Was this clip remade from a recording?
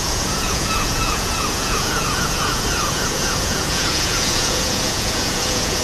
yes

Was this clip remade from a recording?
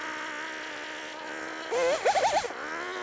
no